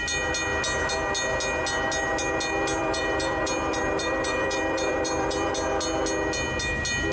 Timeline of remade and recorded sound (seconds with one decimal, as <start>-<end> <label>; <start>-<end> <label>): 0.0-2.8 recorded; 2.8-5.5 remade; 5.5-7.1 recorded